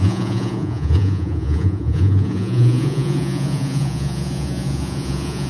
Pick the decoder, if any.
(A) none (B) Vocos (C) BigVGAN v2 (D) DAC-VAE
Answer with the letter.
B